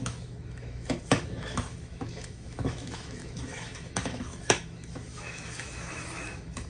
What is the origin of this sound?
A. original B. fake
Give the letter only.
B